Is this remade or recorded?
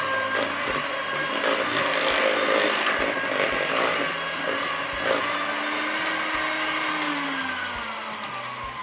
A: recorded